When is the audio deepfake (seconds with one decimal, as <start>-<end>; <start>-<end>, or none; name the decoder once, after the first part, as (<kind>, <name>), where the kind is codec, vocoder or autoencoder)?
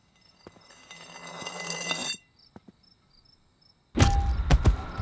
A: none